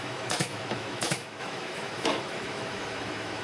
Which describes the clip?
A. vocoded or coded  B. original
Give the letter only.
A